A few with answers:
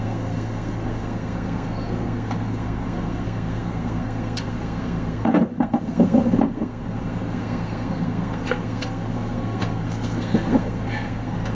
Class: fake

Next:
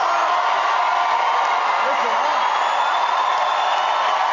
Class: real